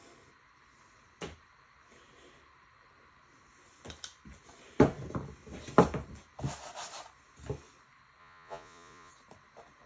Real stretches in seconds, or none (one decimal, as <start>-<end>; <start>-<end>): 0.0-8.2; 9.1-9.9

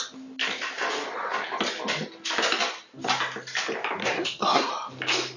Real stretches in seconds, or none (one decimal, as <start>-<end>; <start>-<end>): 0.0-4.0; 4.7-5.4

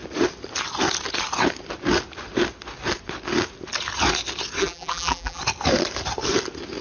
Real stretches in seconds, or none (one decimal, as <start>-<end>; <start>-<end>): 0.0-4.6; 5.4-6.8

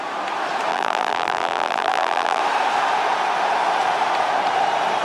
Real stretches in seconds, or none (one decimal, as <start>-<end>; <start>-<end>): 0.0-0.7; 2.4-5.0